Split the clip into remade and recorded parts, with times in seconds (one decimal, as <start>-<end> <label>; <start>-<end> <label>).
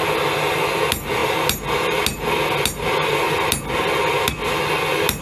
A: 0.0-5.2 recorded